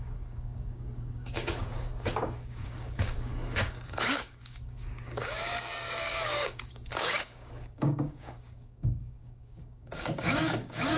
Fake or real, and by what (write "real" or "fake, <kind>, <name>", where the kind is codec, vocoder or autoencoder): fake, codec, DAC